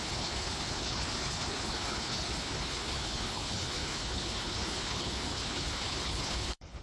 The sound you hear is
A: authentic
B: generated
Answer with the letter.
B